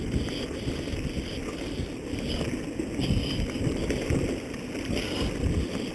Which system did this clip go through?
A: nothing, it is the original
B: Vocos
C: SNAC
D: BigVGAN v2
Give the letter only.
A